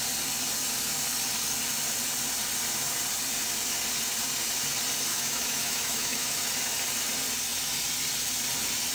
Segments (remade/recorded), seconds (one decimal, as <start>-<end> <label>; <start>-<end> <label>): 0.0-5.1 recorded; 5.1-6.5 remade; 6.5-8.9 recorded

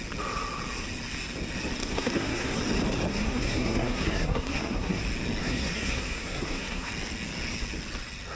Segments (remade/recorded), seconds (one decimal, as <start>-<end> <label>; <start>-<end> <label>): 0.0-1.8 recorded; 1.8-2.6 remade; 2.6-3.1 recorded; 3.1-5.0 remade; 5.0-5.4 recorded; 5.4-6.9 remade; 6.9-8.3 recorded

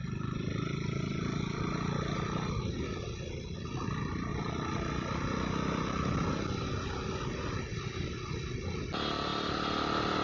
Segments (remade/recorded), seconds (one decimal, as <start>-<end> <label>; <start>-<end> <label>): 0.0-10.2 recorded

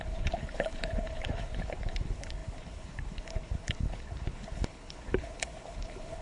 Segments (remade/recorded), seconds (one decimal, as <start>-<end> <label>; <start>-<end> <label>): 0.0-6.2 remade